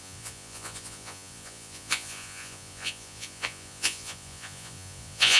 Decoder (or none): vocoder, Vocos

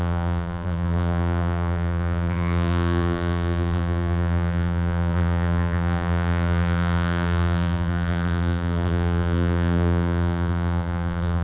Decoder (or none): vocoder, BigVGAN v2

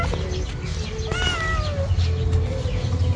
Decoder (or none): none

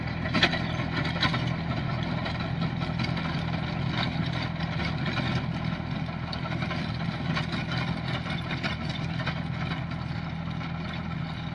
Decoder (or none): none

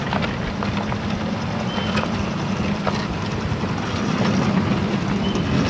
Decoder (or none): none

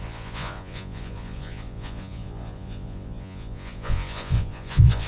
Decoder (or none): vocoder, Vocos